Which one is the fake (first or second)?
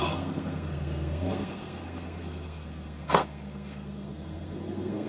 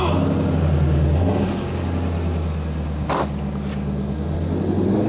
first